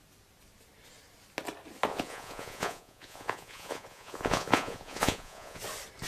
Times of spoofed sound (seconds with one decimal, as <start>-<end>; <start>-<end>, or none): 1.9-5.6